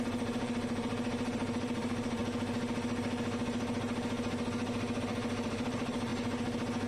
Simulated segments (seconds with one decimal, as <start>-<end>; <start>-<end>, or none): 0.0-2.2; 5.0-6.1